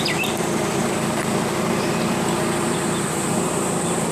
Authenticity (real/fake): fake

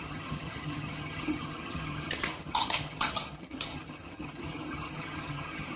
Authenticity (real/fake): fake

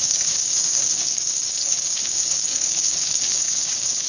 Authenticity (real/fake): fake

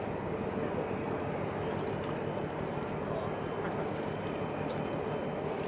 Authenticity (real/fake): real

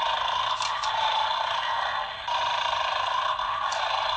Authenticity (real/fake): real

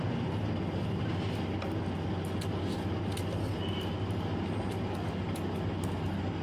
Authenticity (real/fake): real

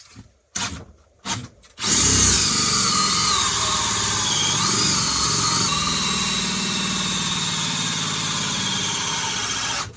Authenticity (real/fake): real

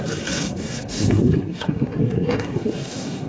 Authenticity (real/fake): fake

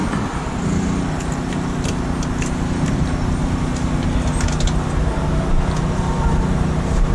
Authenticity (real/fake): real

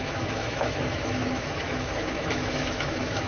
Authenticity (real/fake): fake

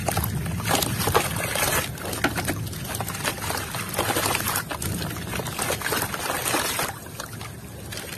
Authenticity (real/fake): real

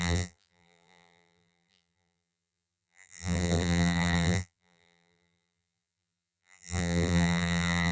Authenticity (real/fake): fake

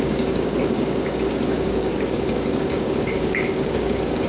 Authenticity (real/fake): fake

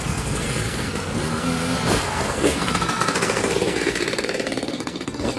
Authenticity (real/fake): fake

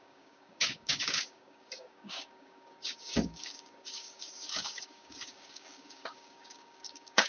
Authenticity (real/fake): fake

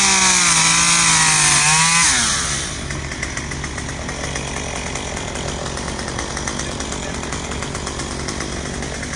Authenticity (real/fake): real